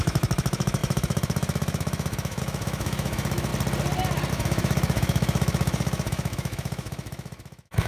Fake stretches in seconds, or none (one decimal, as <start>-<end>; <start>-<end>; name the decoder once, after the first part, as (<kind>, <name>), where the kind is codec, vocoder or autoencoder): 0.0-3.5 (autoencoder, DAC-VAE); 4.3-7.9